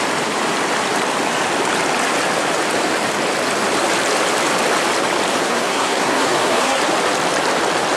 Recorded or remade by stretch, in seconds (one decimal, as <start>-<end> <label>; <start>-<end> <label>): 0.0-5.4 recorded; 5.4-6.8 remade; 6.8-8.0 recorded